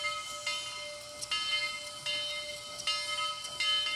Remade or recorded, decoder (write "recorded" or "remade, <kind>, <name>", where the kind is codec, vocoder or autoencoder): recorded